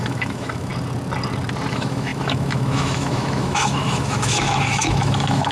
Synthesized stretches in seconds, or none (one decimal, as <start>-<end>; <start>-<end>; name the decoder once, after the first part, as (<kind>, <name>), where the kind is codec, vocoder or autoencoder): 0.0-0.7 (autoencoder, DAC-VAE); 1.7-5.5